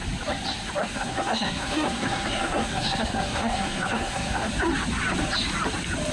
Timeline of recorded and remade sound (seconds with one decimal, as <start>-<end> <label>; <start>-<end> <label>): 0.0-0.8 recorded; 0.8-4.5 remade; 4.5-6.1 recorded